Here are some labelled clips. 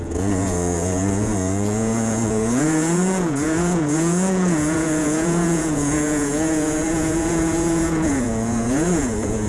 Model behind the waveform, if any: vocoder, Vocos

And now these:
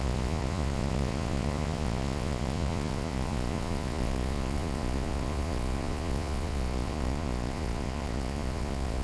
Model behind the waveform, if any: vocoder, Vocos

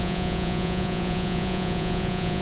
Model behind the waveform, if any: vocoder, Vocos